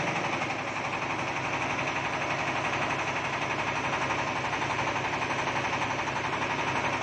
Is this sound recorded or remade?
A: recorded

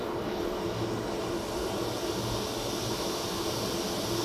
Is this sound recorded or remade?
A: recorded